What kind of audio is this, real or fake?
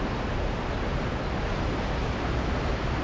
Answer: real